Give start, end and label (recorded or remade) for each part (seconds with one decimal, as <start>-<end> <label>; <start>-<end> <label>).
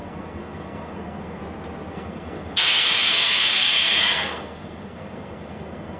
0.0-1.4 remade; 1.4-1.9 recorded; 1.9-6.0 remade